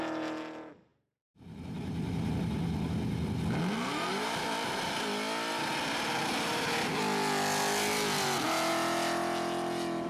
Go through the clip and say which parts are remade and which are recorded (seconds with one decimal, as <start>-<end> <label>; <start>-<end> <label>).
0.0-0.9 recorded; 0.9-2.3 remade; 2.3-4.1 recorded; 4.1-4.7 remade; 4.7-10.1 recorded